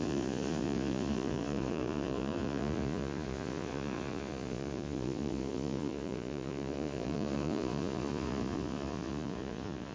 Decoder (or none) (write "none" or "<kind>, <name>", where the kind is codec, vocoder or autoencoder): vocoder, Vocos